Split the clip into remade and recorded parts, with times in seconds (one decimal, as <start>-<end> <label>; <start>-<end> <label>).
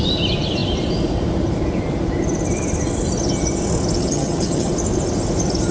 0.0-4.0 recorded; 4.0-4.7 remade; 4.7-5.7 recorded